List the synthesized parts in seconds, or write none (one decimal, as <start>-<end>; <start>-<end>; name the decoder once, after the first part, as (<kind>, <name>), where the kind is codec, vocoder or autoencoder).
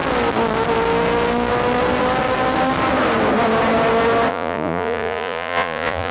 4.3-6.1 (vocoder, Vocos)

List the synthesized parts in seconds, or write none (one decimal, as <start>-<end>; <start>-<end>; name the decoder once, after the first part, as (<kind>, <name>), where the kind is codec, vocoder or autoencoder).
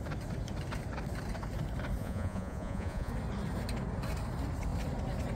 2.0-3.1 (vocoder, Vocos)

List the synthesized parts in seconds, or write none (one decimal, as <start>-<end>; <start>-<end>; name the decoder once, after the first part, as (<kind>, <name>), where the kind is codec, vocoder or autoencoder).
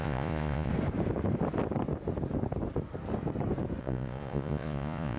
0.0-0.7 (vocoder, Vocos); 3.8-5.2